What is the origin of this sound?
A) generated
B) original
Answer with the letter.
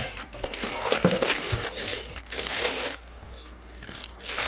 A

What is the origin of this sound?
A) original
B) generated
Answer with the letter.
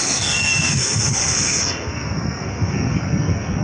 B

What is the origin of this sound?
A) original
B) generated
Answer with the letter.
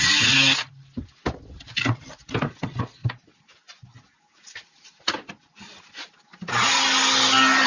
A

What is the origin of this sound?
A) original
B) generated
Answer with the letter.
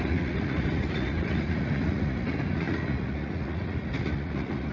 B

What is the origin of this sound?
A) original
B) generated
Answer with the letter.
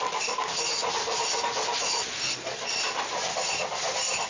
A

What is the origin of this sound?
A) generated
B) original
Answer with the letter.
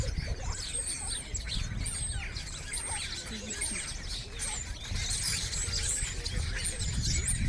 B